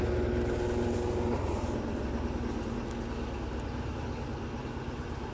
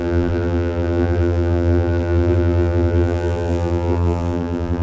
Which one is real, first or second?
first